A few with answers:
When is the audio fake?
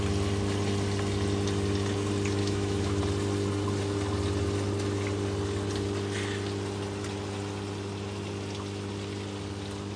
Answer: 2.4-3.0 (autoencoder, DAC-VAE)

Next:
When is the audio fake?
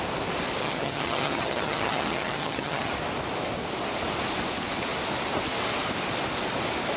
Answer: 0.6-2.9 (vocoder, HiFi-GAN)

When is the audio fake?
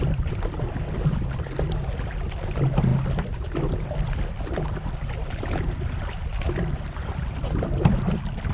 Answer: none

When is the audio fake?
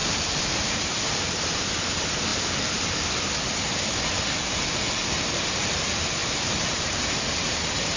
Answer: 0.0-1.3 (vocoder, BigVGAN v2); 6.2-7.2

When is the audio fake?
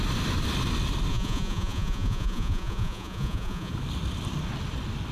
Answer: 1.1-3.7 (vocoder, Vocos)